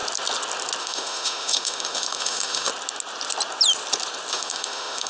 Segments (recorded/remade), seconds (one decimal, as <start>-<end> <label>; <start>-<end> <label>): 0.0-0.8 recorded; 0.8-2.7 remade; 2.7-4.3 recorded; 4.3-5.1 remade